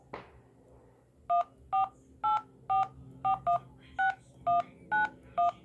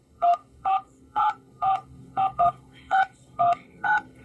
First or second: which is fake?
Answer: second